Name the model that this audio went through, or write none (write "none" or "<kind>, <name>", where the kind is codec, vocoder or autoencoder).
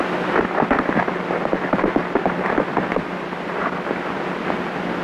none